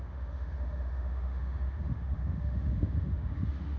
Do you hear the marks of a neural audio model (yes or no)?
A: yes